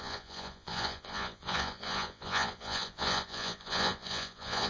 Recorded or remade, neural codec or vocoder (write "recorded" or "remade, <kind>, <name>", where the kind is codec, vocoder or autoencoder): remade, vocoder, Vocos